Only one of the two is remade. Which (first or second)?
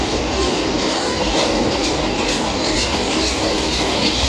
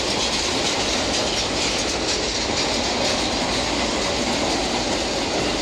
first